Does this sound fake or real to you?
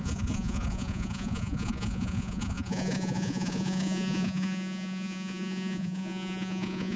fake